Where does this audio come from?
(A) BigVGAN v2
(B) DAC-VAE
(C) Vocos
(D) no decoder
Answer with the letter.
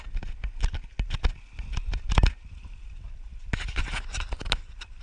D